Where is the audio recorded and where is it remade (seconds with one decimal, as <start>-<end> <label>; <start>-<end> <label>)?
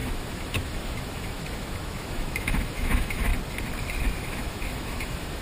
0.0-3.3 remade; 3.3-4.1 recorded; 4.1-5.4 remade